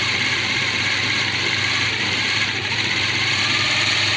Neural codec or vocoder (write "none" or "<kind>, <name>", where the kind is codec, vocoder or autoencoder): vocoder, BigVGAN v2